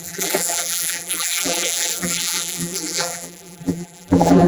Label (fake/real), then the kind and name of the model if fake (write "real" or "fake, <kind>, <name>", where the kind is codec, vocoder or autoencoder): fake, vocoder, BigVGAN v2